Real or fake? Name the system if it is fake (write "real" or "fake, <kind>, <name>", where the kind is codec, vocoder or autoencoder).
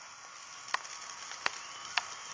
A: real